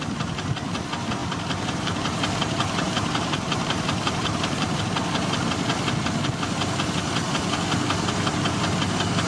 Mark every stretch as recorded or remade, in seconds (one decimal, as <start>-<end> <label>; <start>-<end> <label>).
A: 0.0-1.2 recorded; 1.2-4.8 remade; 4.8-9.3 recorded